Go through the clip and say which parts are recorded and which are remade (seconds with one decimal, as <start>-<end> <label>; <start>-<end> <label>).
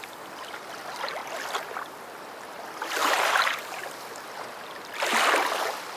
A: 0.0-3.0 recorded; 3.0-3.5 remade; 3.5-6.0 recorded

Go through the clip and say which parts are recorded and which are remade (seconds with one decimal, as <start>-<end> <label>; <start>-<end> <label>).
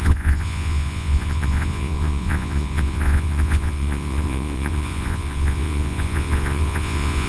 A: 0.0-7.3 remade